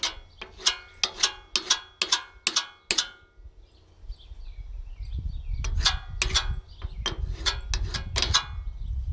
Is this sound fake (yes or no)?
no